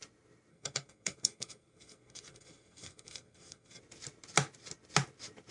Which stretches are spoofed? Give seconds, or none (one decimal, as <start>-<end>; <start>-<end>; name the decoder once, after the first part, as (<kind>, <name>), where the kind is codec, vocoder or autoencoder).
0.5-3.8 (codec, SNAC)